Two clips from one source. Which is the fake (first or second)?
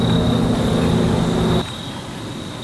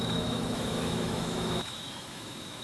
second